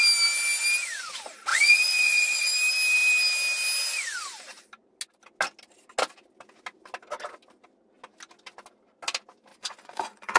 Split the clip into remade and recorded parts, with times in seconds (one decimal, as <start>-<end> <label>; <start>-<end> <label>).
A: 0.0-1.5 recorded; 1.5-2.5 remade; 2.5-9.5 recorded; 9.5-10.4 remade